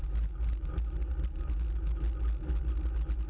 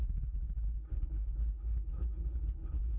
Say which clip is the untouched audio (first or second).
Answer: first